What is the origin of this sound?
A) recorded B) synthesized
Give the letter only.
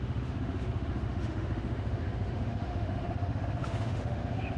B